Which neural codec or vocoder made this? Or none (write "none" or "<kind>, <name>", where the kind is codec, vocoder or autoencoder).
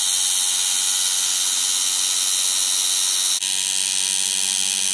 none